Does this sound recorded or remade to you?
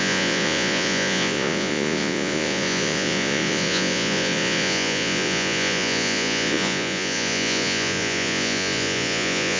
remade